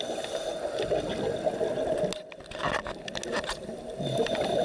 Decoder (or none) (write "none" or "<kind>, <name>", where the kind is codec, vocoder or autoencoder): none